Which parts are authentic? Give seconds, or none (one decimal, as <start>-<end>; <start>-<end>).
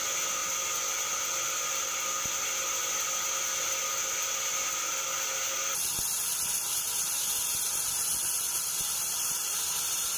0.0-10.2